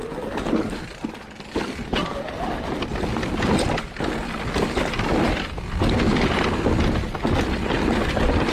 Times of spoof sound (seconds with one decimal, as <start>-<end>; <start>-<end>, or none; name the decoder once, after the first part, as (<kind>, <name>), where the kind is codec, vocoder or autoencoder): none